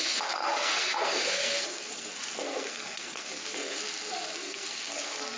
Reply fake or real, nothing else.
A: fake